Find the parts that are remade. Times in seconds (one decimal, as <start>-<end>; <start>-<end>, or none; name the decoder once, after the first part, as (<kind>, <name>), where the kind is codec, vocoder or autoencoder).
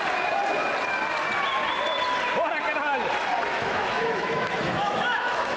3.5-5.6 (autoencoder, DAC-VAE)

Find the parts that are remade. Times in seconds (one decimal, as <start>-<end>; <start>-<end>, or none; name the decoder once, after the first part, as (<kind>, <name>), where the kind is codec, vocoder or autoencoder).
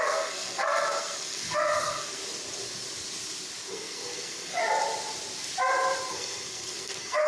0.0-2.2 (codec, SNAC); 3.7-4.6; 6.1-7.3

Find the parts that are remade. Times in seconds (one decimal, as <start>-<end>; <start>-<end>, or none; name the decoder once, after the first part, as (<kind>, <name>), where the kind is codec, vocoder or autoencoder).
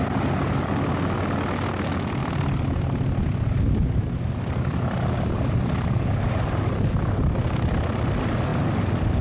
none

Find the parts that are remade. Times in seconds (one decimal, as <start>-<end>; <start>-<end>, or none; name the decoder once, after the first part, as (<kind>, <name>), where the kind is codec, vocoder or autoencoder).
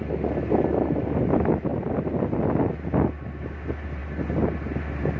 none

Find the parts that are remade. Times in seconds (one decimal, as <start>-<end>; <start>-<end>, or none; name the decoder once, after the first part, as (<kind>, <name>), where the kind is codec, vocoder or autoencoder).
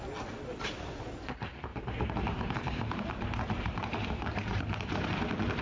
1.7-5.1 (vocoder, BigVGAN v2)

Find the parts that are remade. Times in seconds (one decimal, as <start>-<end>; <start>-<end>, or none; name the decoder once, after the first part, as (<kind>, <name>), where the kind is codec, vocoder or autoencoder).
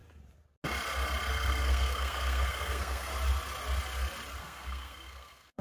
1.3-3.1 (codec, SNAC); 4.4-5.6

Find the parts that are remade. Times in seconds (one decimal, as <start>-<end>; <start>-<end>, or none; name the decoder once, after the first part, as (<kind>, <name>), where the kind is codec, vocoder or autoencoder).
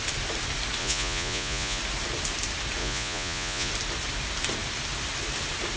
0.8-1.8 (vocoder, Vocos); 2.8-3.7